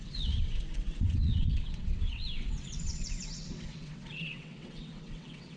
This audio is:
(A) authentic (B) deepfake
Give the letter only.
B